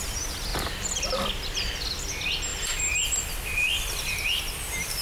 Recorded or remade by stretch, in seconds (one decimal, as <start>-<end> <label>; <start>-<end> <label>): 0.0-0.5 recorded; 0.5-2.1 remade; 2.1-2.5 recorded; 2.5-4.4 remade; 4.4-5.0 recorded